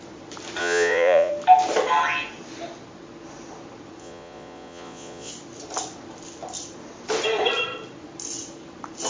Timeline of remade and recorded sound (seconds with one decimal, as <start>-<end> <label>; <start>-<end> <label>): 0.0-0.6 recorded; 0.6-1.3 remade; 1.3-4.0 recorded; 4.0-5.3 remade; 5.3-9.1 recorded